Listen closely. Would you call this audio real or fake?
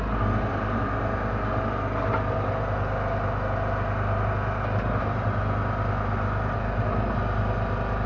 real